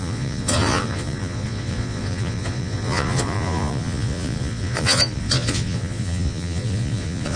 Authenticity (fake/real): fake